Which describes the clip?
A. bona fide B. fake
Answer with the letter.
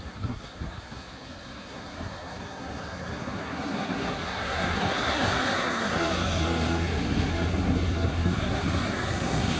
B